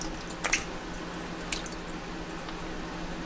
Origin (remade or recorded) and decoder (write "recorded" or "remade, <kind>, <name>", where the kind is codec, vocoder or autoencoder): recorded